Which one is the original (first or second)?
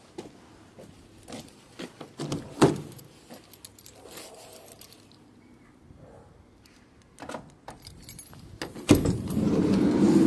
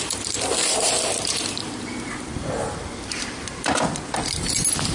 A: first